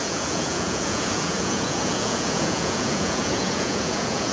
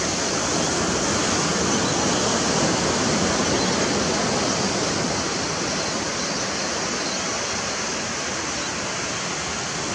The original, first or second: second